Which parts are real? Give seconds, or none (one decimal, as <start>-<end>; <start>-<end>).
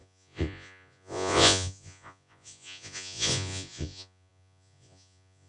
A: none